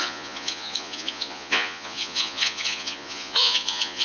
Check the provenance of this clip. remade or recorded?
remade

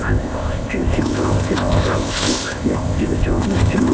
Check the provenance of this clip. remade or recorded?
remade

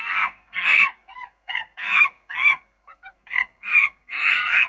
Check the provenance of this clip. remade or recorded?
remade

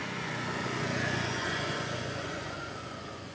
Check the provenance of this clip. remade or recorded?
remade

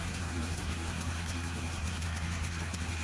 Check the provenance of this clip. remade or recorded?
remade